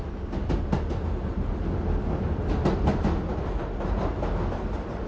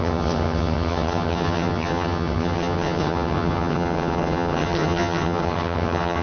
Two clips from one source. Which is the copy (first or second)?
second